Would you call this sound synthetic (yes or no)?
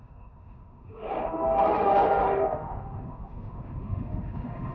yes